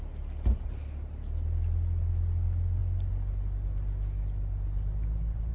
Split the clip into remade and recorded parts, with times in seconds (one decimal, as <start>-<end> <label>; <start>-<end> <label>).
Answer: 0.0-5.5 recorded

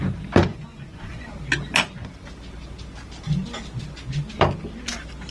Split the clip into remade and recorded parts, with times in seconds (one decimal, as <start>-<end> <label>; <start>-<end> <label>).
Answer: 0.0-0.5 recorded; 0.5-1.3 remade; 1.3-5.3 recorded

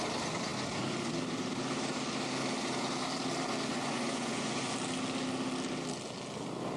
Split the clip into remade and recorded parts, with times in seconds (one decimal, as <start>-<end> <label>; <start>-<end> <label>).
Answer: 0.0-3.7 recorded; 3.7-4.7 remade; 4.7-6.8 recorded

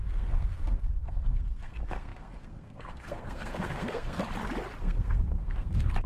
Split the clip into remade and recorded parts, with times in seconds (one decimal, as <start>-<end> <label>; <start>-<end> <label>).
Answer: 0.0-4.2 remade; 4.2-4.8 recorded; 4.8-6.1 remade